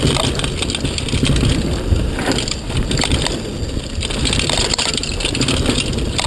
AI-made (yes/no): no